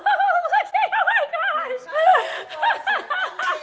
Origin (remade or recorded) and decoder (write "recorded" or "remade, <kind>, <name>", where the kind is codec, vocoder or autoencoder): recorded